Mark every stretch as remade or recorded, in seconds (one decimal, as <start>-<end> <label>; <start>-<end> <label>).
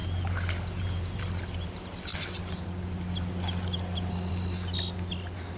0.0-5.6 recorded